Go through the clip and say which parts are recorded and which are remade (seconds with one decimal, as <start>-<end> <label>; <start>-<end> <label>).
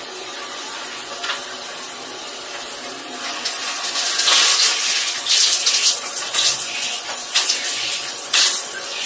0.0-1.4 remade; 1.4-3.2 recorded; 3.2-9.1 remade